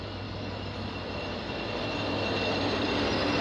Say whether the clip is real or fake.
real